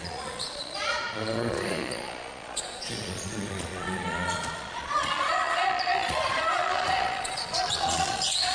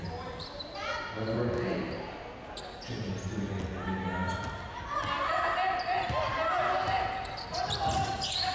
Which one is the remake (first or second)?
first